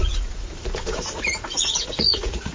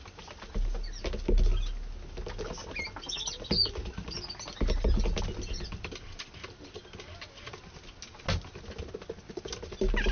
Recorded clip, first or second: second